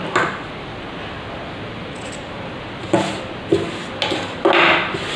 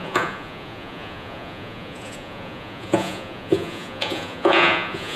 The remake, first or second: second